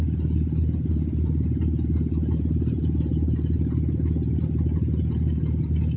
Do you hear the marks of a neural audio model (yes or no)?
no